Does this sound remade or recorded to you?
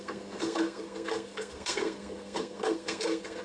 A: remade